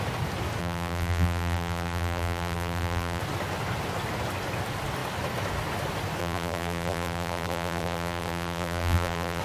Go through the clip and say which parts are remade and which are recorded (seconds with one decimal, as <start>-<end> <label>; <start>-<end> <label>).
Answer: 0.0-0.6 recorded; 0.6-3.2 remade; 3.2-6.2 recorded; 6.2-9.4 remade